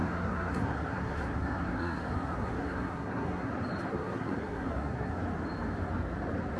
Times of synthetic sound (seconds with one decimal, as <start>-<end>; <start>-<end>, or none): 0.0-3.5; 3.9-5.2